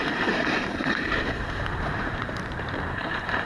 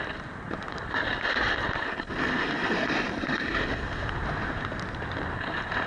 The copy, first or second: first